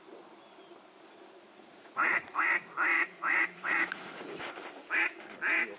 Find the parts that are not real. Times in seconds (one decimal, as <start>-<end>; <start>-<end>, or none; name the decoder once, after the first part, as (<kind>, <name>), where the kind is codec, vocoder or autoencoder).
1.5-2.4 (vocoder, Vocos); 2.9-4.5